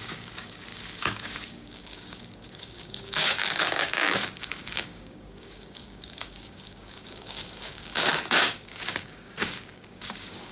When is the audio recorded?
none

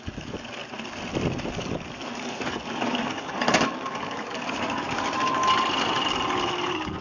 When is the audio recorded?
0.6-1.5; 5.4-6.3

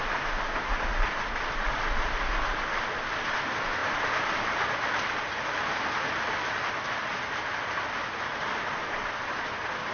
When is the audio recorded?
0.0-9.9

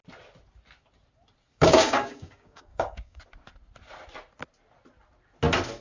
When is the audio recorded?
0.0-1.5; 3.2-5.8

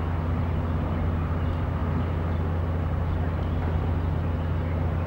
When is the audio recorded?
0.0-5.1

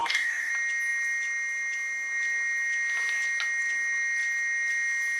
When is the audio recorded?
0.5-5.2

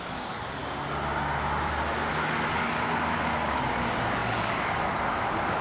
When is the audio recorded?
0.6-2.1

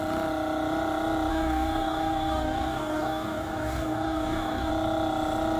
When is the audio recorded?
0.0-1.3; 4.7-5.6